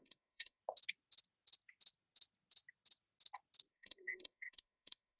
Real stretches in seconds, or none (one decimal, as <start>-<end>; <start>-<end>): 0.6-3.7